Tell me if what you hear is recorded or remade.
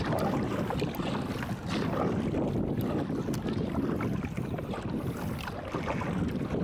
recorded